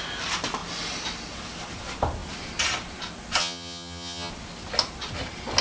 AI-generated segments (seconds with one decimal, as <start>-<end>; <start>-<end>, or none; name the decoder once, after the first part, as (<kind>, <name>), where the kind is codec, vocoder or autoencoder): 3.4-4.3 (vocoder, HiFi-GAN)